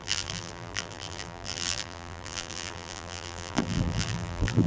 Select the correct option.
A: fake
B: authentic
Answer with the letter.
A